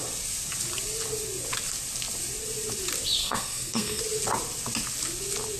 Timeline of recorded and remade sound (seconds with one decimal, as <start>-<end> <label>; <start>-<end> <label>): 0.0-3.2 recorded; 3.2-4.0 remade; 4.0-5.6 recorded